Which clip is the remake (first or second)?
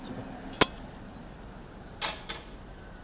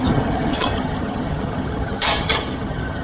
second